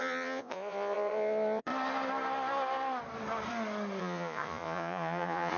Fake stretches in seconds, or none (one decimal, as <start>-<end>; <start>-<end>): 0.0-1.7; 4.0-5.6